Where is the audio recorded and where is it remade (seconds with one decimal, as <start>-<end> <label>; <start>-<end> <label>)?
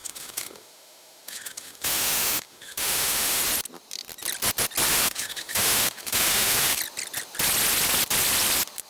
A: 0.0-3.4 remade; 3.4-4.9 recorded; 4.9-6.8 remade; 6.8-8.9 recorded